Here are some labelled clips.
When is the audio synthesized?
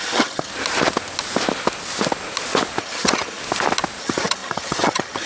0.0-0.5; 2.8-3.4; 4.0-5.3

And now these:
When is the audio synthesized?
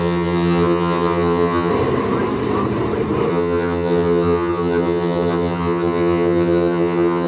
0.0-1.7; 3.3-7.3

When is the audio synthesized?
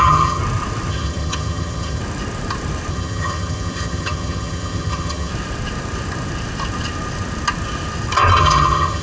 0.0-0.4; 0.9-2.0; 2.9-5.3; 8.4-9.0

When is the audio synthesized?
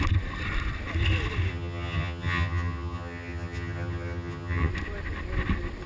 1.5-4.7